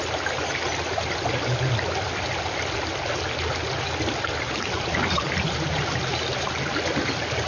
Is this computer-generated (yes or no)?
no